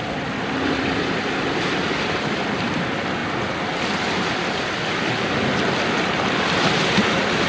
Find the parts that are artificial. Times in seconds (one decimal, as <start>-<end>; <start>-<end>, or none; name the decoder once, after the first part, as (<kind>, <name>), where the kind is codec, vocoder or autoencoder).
none